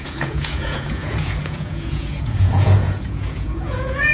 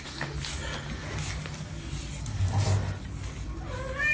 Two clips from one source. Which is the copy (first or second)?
first